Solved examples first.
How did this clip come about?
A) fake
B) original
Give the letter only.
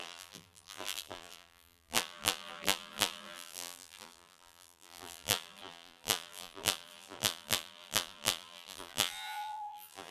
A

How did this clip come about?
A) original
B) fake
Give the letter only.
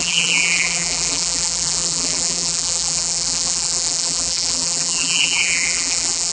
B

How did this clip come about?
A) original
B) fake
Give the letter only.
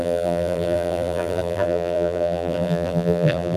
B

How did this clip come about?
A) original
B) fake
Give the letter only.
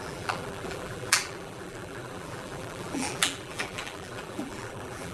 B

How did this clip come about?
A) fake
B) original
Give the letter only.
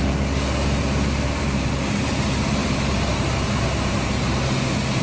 B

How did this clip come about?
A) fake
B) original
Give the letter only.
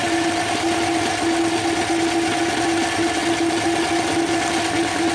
B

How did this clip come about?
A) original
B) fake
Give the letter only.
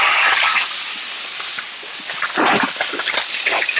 A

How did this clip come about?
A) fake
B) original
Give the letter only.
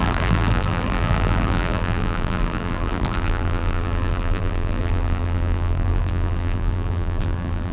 A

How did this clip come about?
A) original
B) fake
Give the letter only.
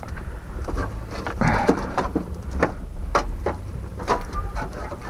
B